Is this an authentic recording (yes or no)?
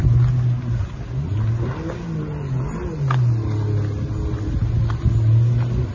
yes